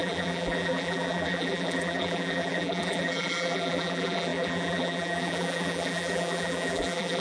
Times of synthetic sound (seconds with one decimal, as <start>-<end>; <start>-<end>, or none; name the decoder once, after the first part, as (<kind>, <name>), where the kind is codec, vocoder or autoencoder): 0.0-7.2 (vocoder, BigVGAN v2)